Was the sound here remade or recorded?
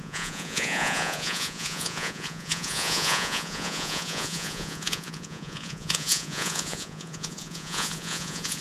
remade